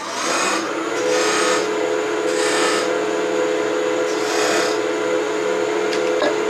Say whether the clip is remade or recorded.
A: recorded